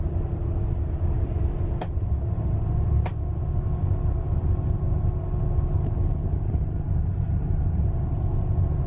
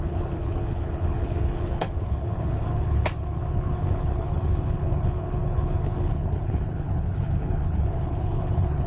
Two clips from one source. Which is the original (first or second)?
first